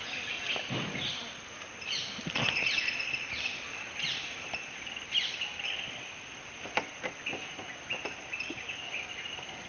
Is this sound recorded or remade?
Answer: recorded